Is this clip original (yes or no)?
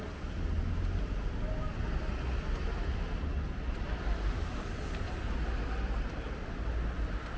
yes